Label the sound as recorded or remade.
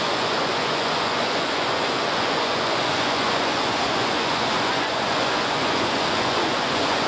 remade